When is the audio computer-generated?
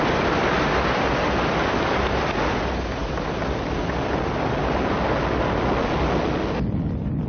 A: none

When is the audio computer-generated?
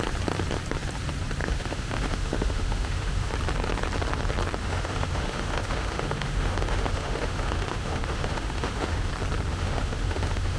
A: 1.4-3.3 (autoencoder, DAC-VAE); 4.6-9.1; 9.5-10.6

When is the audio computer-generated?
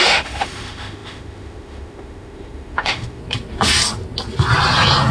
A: 0.0-3.2 (autoencoder, DAC-VAE)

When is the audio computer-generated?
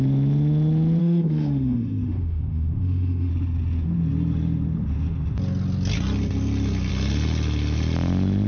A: 1.0-3.3 (autoencoder, DAC-VAE)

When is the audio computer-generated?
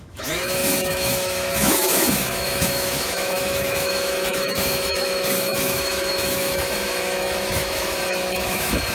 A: 0.0-8.9 (autoencoder, DAC-VAE)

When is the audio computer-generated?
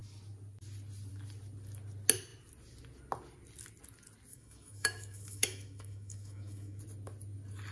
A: 4.3-6.8 (autoencoder, DAC-VAE)